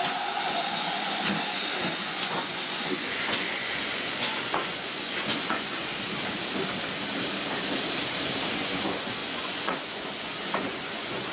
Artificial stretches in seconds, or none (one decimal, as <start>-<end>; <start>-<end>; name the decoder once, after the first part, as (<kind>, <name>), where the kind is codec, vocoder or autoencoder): 0.0-5.9 (vocoder, Vocos); 8.5-11.3